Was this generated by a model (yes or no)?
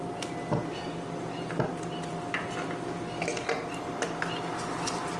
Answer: no